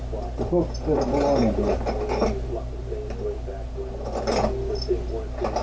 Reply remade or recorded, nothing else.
recorded